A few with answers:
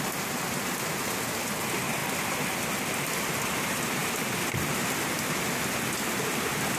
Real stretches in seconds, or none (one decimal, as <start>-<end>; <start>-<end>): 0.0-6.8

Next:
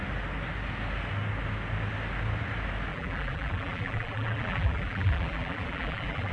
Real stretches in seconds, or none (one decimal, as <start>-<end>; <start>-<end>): 0.0-2.9

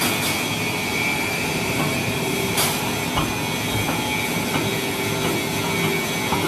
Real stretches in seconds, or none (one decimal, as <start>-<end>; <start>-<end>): 0.0-0.9; 2.7-6.5